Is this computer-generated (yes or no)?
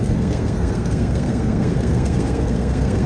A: yes